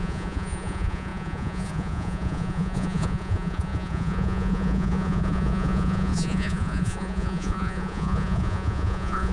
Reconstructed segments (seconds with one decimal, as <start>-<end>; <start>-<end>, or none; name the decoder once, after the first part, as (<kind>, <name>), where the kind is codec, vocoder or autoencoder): 0.0-9.3 (vocoder, Vocos)